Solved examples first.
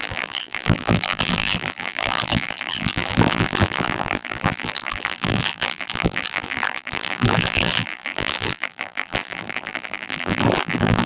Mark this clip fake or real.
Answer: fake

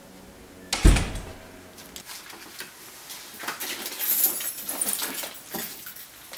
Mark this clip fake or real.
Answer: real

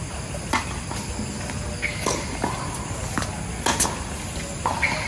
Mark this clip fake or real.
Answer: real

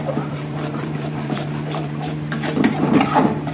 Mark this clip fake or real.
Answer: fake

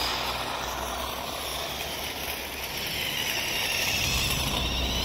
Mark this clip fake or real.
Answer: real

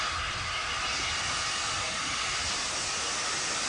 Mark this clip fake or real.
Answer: real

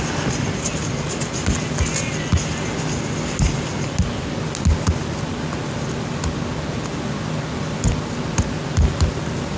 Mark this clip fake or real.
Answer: real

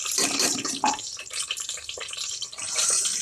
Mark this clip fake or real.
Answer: fake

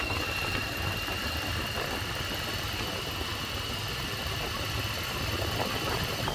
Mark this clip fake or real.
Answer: real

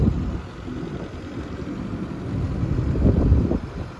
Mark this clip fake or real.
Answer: fake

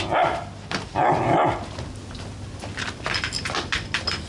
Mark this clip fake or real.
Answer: real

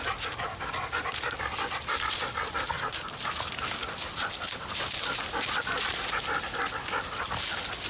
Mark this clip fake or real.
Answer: real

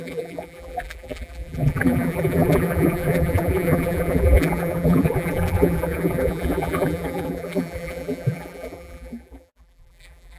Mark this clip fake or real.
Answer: fake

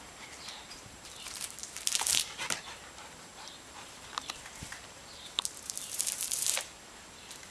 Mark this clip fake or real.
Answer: fake